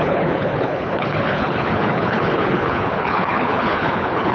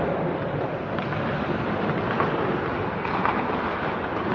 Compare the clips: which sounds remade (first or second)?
first